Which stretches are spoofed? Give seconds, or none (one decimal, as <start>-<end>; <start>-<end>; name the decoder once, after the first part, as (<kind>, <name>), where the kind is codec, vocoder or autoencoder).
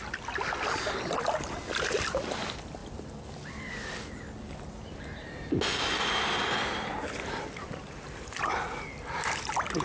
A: none